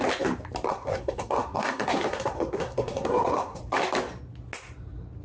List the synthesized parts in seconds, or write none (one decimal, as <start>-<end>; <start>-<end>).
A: 0.7-3.6